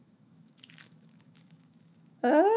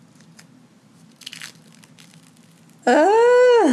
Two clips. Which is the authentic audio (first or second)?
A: second